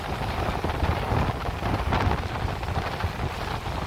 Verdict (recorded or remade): recorded